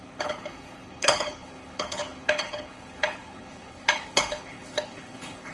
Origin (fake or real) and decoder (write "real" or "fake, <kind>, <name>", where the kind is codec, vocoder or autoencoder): fake, codec, HILCodec